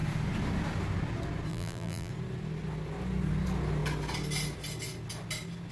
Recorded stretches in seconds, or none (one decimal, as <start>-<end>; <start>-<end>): 0.0-1.5; 2.1-5.7